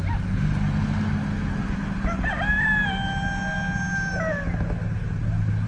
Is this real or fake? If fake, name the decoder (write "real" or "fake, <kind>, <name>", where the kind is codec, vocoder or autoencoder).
real